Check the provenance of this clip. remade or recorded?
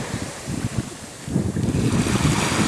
recorded